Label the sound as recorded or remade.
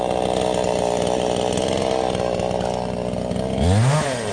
recorded